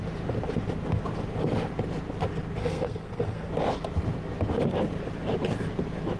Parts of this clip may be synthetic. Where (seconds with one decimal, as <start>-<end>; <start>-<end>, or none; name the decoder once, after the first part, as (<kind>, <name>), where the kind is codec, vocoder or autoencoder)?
2.6-3.5 (codec, SNAC)